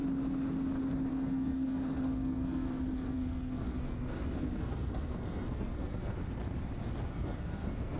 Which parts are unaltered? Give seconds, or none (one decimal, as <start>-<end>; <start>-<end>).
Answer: 0.0-1.1; 6.2-7.1